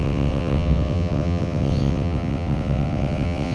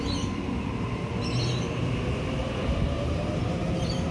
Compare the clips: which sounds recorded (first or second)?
second